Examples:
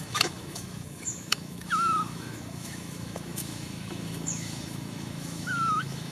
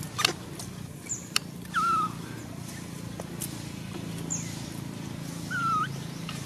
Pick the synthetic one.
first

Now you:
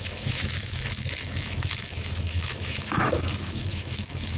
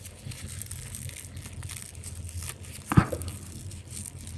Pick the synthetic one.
first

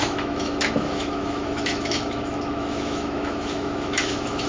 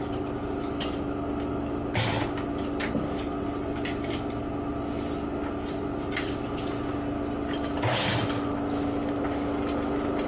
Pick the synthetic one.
first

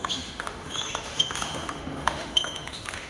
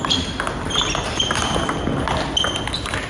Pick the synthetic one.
first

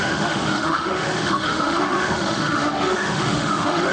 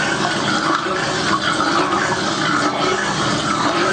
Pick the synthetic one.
first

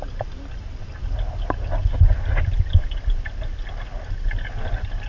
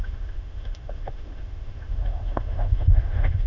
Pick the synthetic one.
second